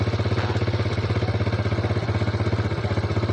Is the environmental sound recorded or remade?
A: recorded